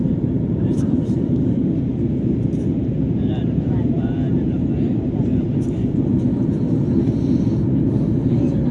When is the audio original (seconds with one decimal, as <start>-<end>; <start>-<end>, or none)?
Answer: 1.6-2.1

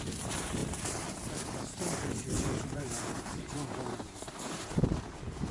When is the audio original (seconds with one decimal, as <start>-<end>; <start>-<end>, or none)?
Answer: 0.6-2.6

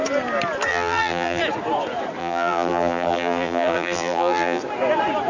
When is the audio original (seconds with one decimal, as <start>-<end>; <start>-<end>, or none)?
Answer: 0.0-0.7; 1.4-2.2; 4.6-5.3